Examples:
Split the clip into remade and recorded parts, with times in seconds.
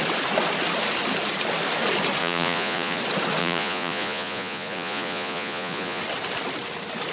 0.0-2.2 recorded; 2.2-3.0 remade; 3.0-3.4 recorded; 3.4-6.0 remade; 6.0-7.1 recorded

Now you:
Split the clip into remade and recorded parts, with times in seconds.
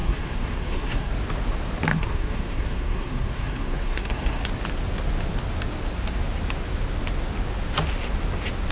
0.0-1.1 remade; 1.1-1.9 recorded; 1.9-4.4 remade; 4.4-8.7 recorded